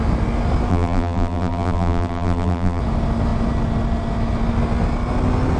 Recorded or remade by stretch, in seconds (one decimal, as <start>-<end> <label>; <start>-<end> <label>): 0.0-0.7 recorded; 0.7-2.8 remade; 2.8-5.6 recorded